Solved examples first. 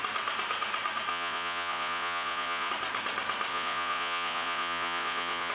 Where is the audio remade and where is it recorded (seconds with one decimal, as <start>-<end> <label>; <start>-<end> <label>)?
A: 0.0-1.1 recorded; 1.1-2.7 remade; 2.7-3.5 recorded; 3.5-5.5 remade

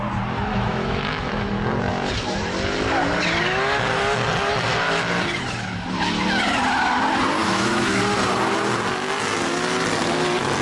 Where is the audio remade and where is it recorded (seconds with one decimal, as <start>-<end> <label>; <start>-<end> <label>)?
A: 0.0-0.5 recorded; 0.5-1.5 remade; 1.5-7.4 recorded; 7.4-8.0 remade; 8.0-10.6 recorded

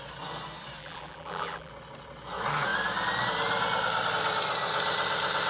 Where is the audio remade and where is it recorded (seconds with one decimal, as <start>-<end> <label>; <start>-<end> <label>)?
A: 0.0-0.8 recorded; 0.8-1.7 remade; 1.7-5.5 recorded

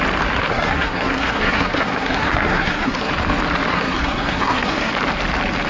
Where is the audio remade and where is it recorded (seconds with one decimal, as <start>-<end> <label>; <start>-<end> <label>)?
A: 0.0-0.5 recorded; 0.5-3.1 remade; 3.1-3.7 recorded; 3.7-4.9 remade; 4.9-5.7 recorded